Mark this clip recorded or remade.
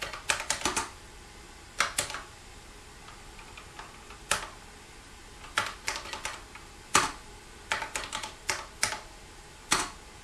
recorded